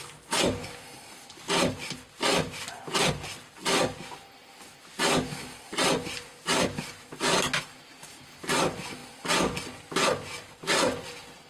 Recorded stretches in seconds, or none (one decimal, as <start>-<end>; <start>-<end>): 0.0-11.5